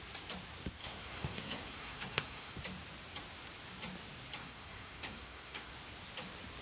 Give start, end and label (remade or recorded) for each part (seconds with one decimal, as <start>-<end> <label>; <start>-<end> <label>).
0.0-0.8 recorded; 0.8-2.5 remade; 2.5-4.4 recorded; 4.4-5.7 remade; 5.7-6.6 recorded